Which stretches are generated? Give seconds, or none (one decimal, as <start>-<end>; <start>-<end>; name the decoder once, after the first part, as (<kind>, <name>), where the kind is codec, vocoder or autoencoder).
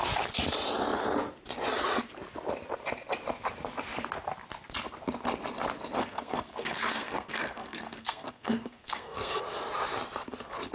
6.0-9.4 (codec, SNAC)